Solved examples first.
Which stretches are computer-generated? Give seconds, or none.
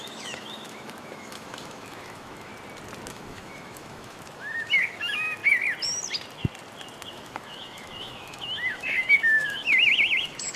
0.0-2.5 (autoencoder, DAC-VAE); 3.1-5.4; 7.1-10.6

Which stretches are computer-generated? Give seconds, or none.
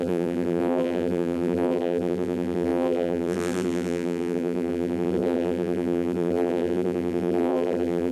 0.0-8.1 (vocoder, BigVGAN v2)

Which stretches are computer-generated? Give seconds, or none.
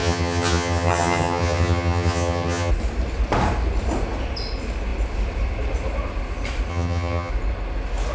0.0-2.7 (vocoder, HiFi-GAN); 6.7-7.3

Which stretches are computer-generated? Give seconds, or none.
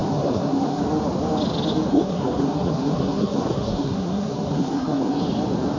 0.0-0.8 (codec, SNAC); 1.9-5.2